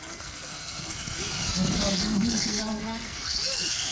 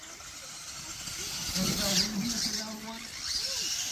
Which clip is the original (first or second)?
second